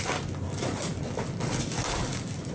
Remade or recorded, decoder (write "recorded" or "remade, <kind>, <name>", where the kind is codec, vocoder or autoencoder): remade, vocoder, BigVGAN v2